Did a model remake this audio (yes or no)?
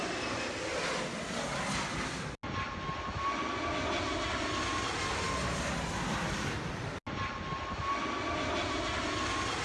no